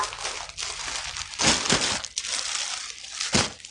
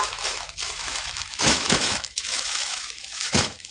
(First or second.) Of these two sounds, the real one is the first